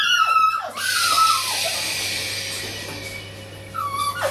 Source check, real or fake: real